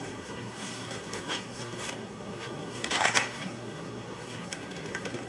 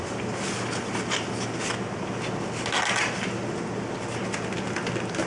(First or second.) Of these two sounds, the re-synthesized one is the first